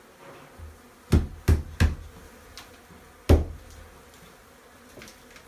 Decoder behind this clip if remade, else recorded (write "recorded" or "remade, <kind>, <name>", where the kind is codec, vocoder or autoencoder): recorded